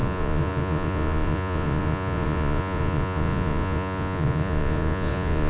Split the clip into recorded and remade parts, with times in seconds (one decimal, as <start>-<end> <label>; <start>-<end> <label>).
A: 0.0-5.5 remade